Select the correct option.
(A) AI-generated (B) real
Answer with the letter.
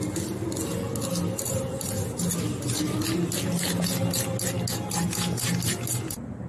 B